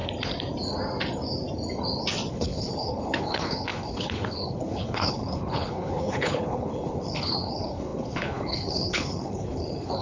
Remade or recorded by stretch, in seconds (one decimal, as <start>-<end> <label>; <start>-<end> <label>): 0.0-2.3 recorded; 2.3-10.0 remade